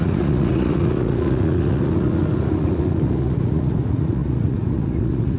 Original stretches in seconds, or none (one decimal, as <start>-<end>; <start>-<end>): none